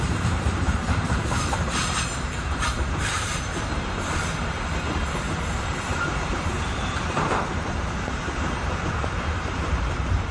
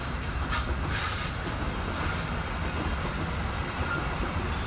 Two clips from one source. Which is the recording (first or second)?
second